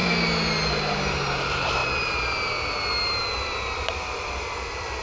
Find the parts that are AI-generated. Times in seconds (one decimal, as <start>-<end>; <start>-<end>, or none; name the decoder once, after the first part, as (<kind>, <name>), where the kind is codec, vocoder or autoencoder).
none